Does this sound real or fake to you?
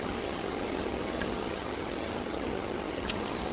fake